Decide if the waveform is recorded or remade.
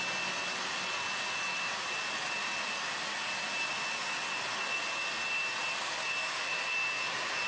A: recorded